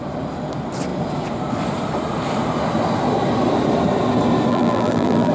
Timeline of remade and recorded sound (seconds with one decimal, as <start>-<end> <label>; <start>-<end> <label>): 0.0-4.5 recorded; 4.5-5.3 remade